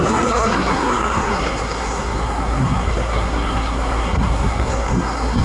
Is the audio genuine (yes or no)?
no